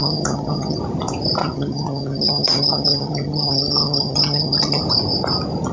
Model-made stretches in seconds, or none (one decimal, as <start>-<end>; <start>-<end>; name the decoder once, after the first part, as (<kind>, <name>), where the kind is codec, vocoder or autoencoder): 0.0-0.8 (vocoder, HiFi-GAN); 1.4-4.8